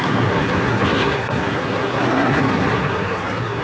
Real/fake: fake